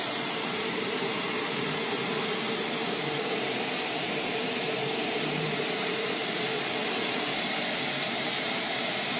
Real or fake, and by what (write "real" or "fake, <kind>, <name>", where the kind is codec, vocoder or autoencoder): fake, vocoder, BigVGAN v2